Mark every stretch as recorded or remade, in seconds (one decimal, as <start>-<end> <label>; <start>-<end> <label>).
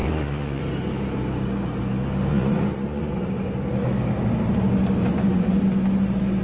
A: 0.0-0.6 remade; 0.6-2.3 recorded; 2.3-3.1 remade; 3.1-5.0 recorded; 5.0-5.6 remade; 5.6-6.4 recorded